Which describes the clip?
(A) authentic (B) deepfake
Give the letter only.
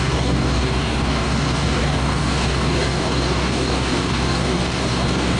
B